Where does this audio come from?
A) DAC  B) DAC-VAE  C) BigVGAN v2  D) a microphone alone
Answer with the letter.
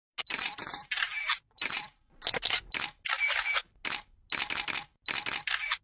D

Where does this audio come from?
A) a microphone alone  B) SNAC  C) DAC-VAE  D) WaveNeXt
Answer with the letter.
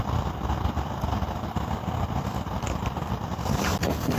A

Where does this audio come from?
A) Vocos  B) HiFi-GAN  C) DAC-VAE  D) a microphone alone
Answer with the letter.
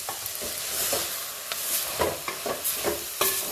D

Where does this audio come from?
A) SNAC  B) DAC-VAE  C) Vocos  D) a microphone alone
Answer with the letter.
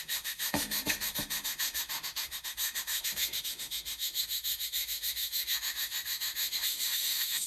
B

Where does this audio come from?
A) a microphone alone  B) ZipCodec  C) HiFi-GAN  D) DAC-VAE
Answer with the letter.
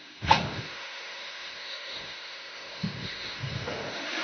D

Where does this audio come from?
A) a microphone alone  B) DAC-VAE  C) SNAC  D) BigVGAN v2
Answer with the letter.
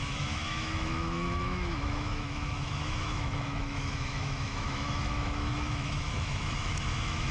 B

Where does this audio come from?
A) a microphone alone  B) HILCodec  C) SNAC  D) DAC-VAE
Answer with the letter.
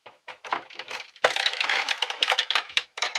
D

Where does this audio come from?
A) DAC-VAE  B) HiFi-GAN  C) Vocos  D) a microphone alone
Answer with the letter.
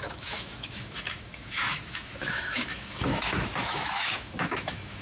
A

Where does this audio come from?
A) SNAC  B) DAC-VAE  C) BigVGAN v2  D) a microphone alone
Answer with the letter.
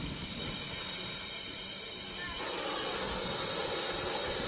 D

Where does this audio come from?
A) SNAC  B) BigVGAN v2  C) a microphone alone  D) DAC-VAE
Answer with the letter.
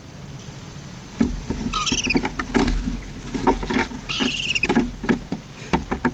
C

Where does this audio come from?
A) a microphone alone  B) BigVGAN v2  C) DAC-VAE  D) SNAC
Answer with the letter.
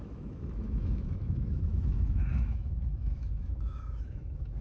C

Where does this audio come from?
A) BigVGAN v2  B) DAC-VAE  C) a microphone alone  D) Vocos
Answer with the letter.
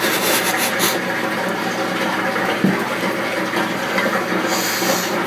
C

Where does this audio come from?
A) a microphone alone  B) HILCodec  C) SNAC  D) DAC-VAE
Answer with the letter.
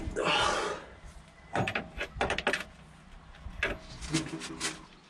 A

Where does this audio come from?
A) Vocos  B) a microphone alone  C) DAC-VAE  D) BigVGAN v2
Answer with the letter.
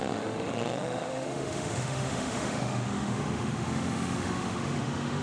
C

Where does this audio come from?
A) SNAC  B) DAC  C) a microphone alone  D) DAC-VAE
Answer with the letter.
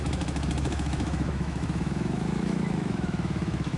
D